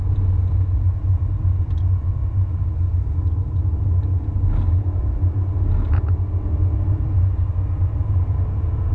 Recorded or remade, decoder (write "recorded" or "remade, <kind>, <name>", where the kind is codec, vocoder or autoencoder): recorded